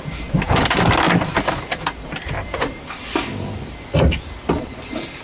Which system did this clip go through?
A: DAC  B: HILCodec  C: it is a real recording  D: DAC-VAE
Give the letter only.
C